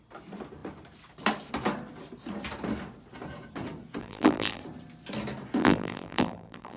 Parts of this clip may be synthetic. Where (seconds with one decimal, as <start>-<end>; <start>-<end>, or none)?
4.0-4.6; 5.6-6.8